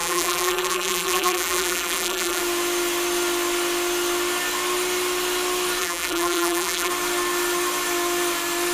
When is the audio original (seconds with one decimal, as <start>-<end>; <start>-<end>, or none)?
2.4-5.8; 6.9-8.7